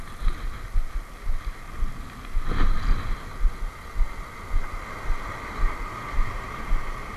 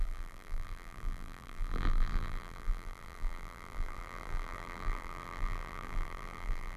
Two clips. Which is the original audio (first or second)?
first